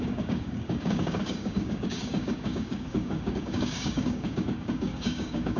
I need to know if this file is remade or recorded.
remade